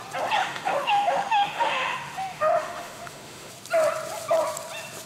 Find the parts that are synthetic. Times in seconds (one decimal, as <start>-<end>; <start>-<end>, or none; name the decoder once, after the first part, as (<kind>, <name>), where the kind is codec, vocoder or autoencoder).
0.4-3.5 (autoencoder, DAC-VAE)